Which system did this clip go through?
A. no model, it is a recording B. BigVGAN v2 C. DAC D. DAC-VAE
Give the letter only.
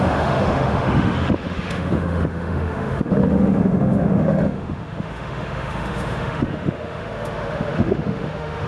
D